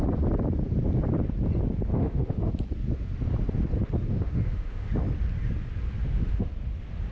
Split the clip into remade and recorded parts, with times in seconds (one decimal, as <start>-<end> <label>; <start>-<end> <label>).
0.0-1.9 recorded; 1.9-2.5 remade; 2.5-4.1 recorded; 4.1-4.9 remade; 4.9-6.0 recorded; 6.0-6.5 remade; 6.5-7.1 recorded